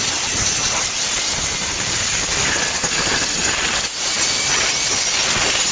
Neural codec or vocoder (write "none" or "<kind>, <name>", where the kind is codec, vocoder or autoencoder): none